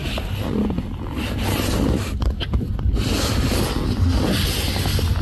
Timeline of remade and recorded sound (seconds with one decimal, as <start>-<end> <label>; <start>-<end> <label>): 0.0-5.2 recorded